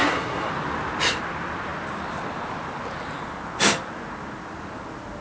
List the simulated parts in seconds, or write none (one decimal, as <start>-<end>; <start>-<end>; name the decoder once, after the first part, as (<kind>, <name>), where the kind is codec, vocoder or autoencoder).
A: 0.0-0.5 (codec, SNAC)